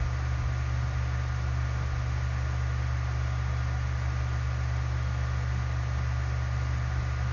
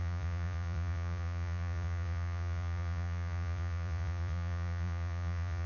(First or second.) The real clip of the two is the first